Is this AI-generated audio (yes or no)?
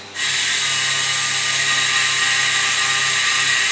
no